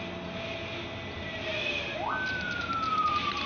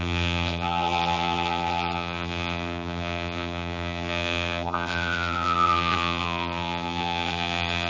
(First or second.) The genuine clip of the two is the first